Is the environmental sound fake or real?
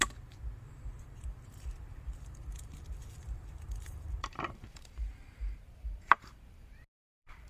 fake